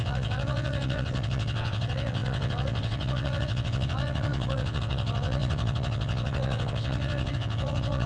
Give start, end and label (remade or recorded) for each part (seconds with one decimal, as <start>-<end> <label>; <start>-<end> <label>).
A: 0.0-8.1 remade